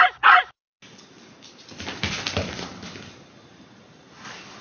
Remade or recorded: recorded